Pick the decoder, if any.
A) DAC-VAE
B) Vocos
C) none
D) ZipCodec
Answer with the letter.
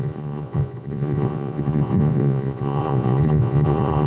B